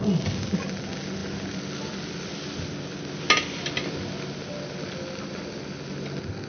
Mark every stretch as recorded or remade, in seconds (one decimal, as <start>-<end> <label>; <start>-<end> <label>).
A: 0.0-6.5 recorded